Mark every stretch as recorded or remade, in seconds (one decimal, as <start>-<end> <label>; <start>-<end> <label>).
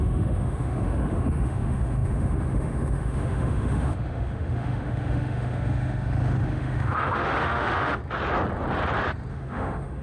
0.0-8.0 remade; 8.0-9.3 recorded; 9.3-10.0 remade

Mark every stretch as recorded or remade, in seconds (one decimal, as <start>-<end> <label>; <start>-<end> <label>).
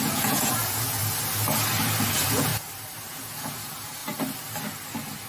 0.0-1.0 remade; 1.0-2.1 recorded; 2.1-2.5 remade; 2.5-3.1 recorded; 3.1-4.0 remade; 4.0-5.3 recorded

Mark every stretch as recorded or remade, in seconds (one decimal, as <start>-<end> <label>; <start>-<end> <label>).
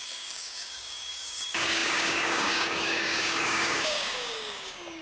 0.0-5.0 remade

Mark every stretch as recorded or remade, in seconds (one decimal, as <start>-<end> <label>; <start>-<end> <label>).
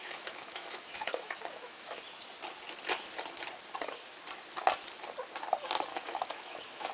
0.0-2.0 remade; 2.0-5.9 recorded; 5.9-6.9 remade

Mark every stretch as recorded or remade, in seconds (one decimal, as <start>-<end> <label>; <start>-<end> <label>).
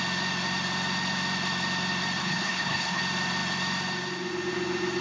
0.0-2.2 recorded; 2.2-3.0 remade; 3.0-5.0 recorded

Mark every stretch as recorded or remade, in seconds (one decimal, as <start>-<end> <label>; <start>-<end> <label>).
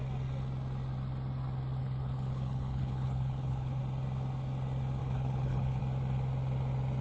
0.0-1.8 recorded; 1.8-3.8 remade; 3.8-5.0 recorded; 5.0-5.8 remade; 5.8-7.0 recorded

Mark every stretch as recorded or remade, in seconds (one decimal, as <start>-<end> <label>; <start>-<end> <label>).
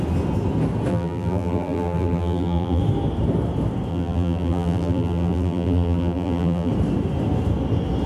0.0-0.9 recorded; 0.9-2.8 remade; 2.8-3.9 recorded; 3.9-6.7 remade; 6.7-8.1 recorded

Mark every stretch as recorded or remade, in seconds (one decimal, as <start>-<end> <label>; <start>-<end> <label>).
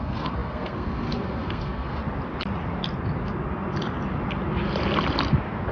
0.0-2.0 remade; 2.0-5.7 recorded